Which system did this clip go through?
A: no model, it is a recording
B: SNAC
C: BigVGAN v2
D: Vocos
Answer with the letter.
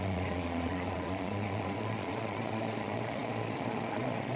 D